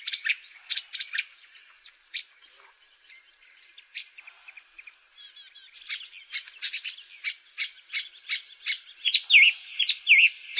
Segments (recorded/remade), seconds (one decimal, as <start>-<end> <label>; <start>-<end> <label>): 0.0-10.6 recorded